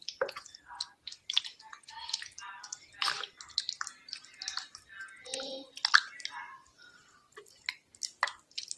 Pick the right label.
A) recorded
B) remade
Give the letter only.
A